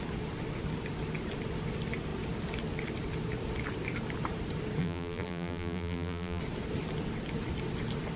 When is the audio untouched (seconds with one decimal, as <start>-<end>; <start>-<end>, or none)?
0.0-4.8; 6.4-8.2